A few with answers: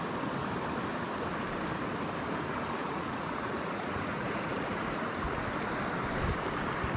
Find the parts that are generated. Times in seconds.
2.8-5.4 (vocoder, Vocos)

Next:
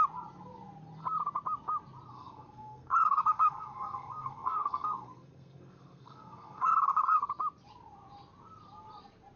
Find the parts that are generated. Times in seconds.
2.1-7.3 (codec, SNAC)

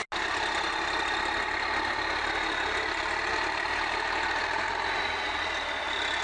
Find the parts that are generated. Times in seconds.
3.3-5.0 (vocoder, BigVGAN v2)

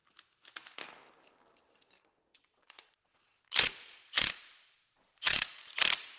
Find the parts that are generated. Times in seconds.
2.0-5.7 (vocoder, Vocos)

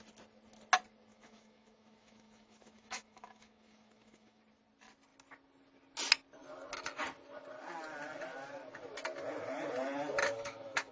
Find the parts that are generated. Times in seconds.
1.1-4.4 (autoencoder, DAC-VAE); 10.2-10.9